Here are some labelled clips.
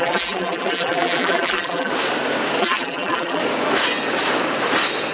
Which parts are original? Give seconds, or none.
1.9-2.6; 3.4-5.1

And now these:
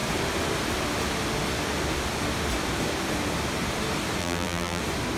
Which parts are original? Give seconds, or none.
0.0-4.2; 4.8-5.2

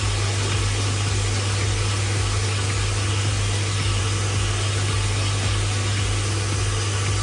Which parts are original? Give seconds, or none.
0.0-7.2

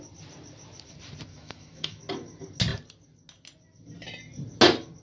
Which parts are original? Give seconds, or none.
0.0-1.3; 2.0-5.0

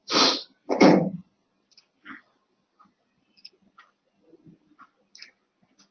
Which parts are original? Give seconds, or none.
3.5-5.9

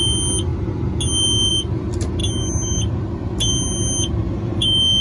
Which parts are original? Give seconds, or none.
0.0-5.0

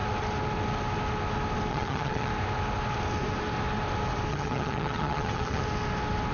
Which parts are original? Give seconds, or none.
0.0-1.7; 2.3-4.3; 5.6-6.3